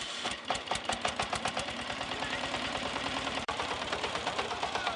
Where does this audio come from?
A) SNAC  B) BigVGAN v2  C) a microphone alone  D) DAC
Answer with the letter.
B